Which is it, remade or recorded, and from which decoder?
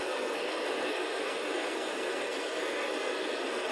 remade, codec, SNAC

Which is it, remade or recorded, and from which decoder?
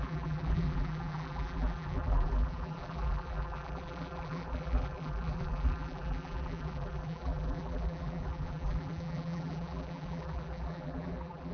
remade, vocoder, BigVGAN v2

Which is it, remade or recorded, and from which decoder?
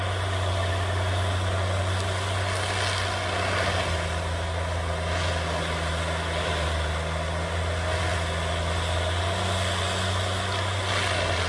recorded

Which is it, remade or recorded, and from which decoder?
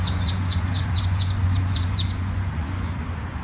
remade, vocoder, Vocos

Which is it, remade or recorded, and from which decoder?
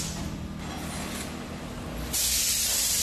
recorded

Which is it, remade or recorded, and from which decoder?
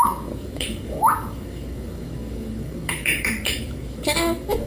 remade, codec, DAC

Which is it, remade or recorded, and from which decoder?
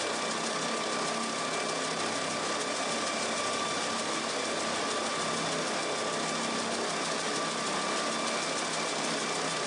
recorded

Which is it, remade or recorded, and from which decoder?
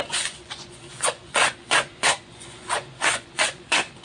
remade, vocoder, Vocos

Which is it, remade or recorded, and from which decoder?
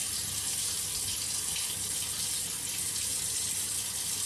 recorded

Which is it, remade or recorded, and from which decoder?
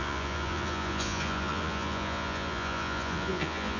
remade, vocoder, Vocos